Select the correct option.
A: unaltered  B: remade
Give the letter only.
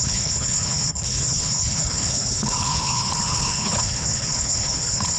B